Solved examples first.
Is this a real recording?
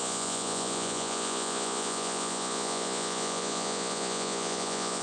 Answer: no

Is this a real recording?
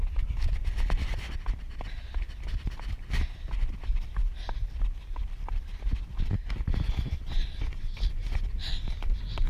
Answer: yes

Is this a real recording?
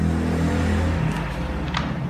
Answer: yes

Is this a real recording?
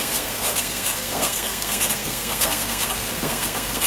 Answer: no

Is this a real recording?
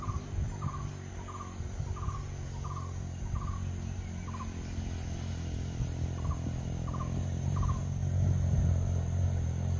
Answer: yes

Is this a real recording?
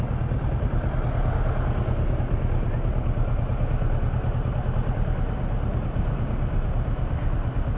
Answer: yes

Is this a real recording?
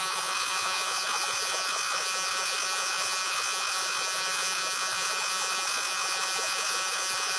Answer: no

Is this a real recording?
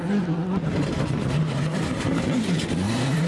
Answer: yes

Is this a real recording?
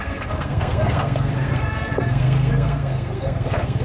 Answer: no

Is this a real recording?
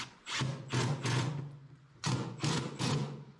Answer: no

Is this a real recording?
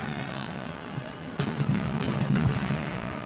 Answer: no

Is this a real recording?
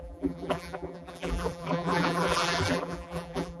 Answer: no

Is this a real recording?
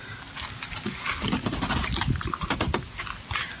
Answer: yes